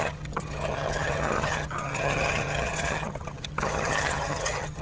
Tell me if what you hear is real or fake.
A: fake